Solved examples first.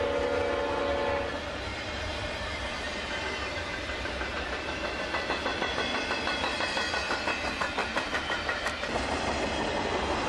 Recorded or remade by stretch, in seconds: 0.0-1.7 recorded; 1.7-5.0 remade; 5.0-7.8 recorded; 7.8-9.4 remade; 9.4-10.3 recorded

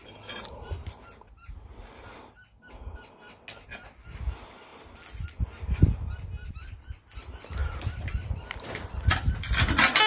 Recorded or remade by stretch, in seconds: 0.0-7.6 recorded; 7.6-9.0 remade; 9.0-10.1 recorded

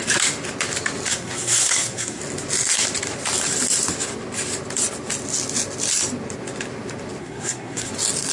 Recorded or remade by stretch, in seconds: 0.0-1.1 recorded; 1.1-2.2 remade; 2.2-7.2 recorded; 7.2-7.9 remade; 7.9-8.3 recorded

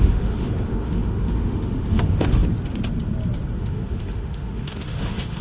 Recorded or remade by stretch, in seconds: 0.0-2.4 remade; 2.4-3.6 recorded; 3.6-5.4 remade

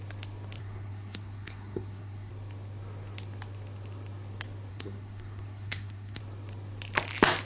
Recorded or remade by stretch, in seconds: 0.0-0.6 recorded; 0.6-2.3 remade; 2.3-4.7 recorded; 4.7-6.2 remade; 6.2-7.4 recorded

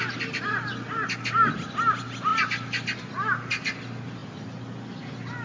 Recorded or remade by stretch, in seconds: 0.0-5.4 recorded

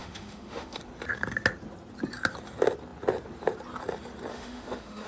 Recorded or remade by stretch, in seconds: 0.0-0.8 remade; 0.8-4.3 recorded; 4.3-5.1 remade